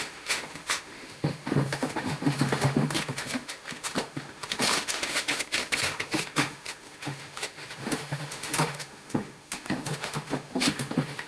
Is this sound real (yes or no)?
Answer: no